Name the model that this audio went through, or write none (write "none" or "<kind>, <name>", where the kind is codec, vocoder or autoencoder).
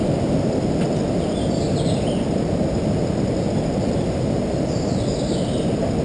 none